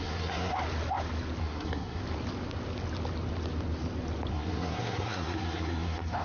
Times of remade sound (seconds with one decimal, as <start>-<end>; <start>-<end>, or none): 0.0-0.5; 1.4-2.0; 4.3-6.2